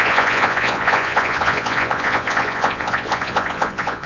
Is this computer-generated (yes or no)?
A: yes